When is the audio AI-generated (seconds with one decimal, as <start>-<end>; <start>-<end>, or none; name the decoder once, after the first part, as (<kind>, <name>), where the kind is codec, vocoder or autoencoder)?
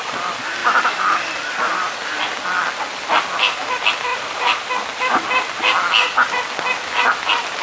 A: 4.1-4.7 (vocoder, BigVGAN v2)